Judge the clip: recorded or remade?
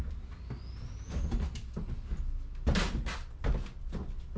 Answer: recorded